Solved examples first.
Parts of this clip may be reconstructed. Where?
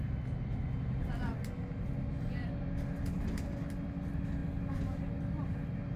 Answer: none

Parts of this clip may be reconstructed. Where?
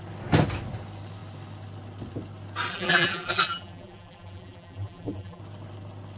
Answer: 2.7-5.4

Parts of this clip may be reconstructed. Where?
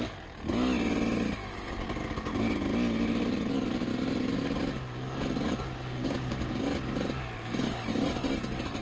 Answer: 6.0-6.6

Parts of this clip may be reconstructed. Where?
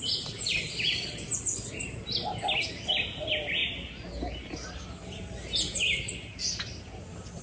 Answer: 0.0-3.6; 6.6-7.4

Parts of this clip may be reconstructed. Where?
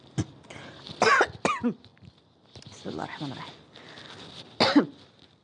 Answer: none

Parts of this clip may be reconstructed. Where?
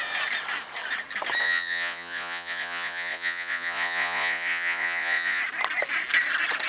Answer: 1.4-5.4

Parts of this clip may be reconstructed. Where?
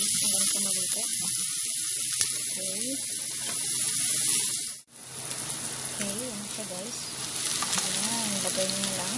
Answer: none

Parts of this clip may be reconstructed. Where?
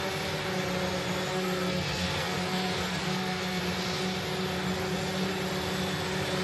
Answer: 1.3-3.6